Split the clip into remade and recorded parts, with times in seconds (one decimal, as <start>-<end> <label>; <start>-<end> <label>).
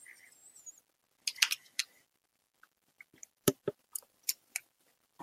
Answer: 0.0-1.8 recorded; 1.8-5.2 remade